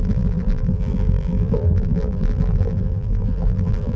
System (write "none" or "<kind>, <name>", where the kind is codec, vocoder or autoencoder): vocoder, BigVGAN v2